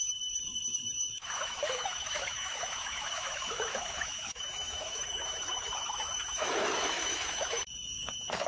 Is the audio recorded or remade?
remade